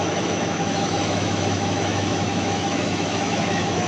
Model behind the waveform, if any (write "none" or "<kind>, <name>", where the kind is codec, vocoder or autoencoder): autoencoder, DAC-VAE